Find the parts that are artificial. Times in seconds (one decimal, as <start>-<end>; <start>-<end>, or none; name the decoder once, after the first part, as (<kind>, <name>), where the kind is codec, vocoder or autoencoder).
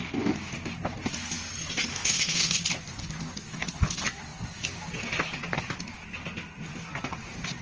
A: 1.9-2.6 (autoencoder, DAC-VAE)